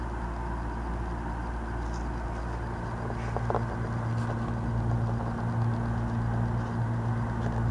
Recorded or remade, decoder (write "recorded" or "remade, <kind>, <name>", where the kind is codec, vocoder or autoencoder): recorded